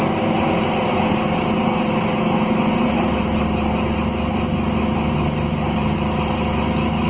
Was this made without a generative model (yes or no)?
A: yes